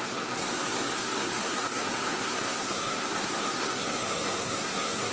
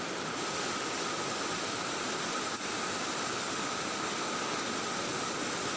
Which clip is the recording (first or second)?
second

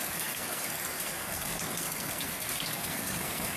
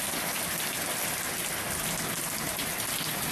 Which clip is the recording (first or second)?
second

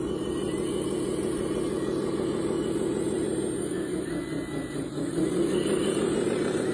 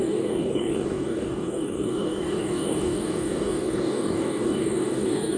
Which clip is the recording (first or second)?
first